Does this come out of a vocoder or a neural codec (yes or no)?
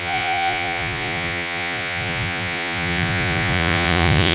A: yes